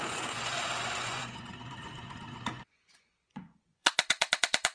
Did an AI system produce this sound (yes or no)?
yes